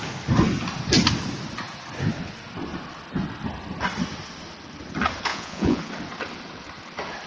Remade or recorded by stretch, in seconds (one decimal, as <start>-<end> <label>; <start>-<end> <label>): 0.0-5.3 recorded; 5.3-5.8 remade; 5.8-7.3 recorded